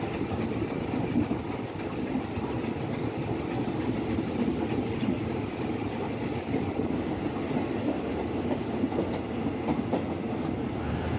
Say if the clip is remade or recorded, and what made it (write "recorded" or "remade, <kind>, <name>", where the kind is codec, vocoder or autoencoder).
recorded